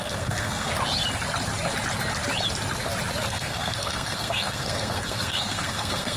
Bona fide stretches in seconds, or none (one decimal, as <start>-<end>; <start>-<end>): 0.7-3.3